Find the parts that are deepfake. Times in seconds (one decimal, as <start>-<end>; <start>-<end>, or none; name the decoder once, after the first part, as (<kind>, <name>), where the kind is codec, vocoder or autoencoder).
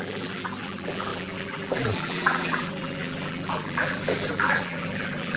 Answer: 0.0-5.4 (vocoder, BigVGAN v2)